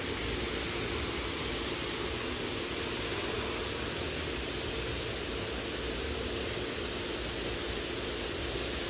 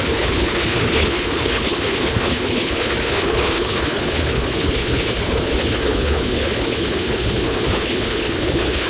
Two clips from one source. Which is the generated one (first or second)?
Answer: second